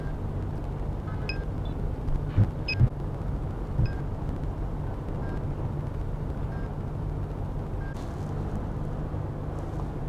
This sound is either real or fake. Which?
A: real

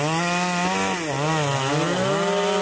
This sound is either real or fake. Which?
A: real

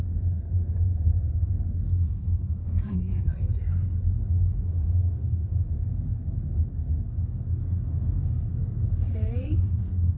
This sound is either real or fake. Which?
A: fake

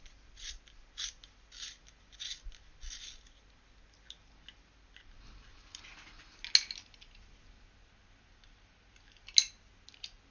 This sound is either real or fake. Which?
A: real